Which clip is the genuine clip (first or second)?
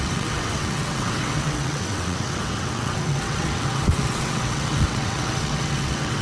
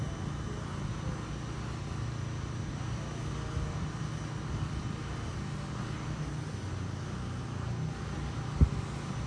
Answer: second